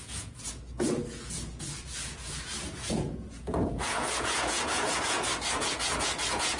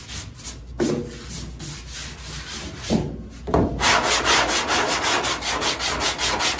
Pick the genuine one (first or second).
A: second